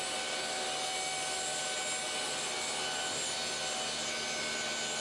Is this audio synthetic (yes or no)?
no